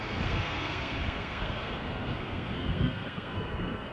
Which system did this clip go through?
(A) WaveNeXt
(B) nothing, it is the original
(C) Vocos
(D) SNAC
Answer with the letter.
D